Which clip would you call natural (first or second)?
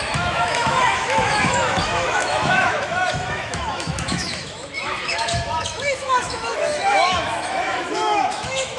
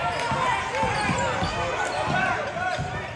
second